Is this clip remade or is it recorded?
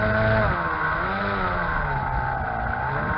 recorded